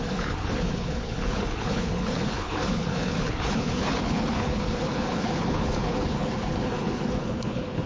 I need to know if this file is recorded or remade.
remade